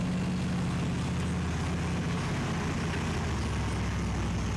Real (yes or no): yes